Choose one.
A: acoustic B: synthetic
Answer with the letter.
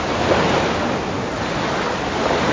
A